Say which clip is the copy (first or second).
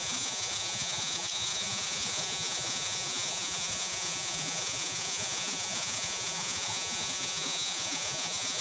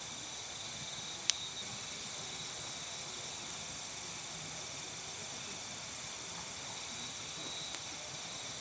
first